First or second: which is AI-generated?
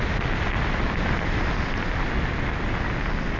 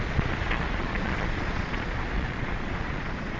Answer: second